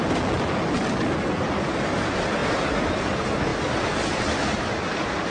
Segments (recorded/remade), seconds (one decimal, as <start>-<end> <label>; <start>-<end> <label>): 0.0-5.3 recorded